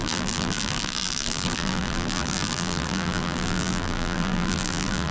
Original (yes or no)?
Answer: no